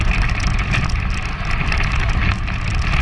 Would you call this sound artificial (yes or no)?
no